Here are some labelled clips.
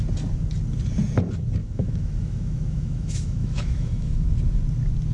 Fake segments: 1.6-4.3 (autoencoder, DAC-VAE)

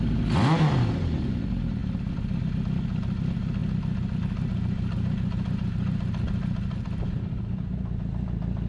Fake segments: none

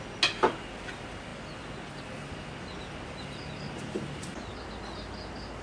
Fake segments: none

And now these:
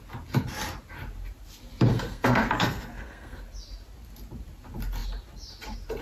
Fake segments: 1.9-3.4 (codec, SNAC)

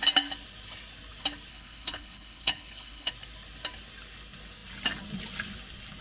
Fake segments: 1.5-3.1 (codec, HILCodec)